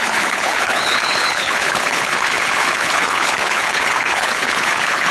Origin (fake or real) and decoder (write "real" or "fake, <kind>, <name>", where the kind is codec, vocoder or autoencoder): fake, codec, HILCodec